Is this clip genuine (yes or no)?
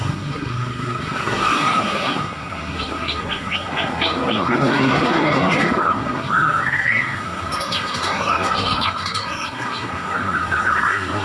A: no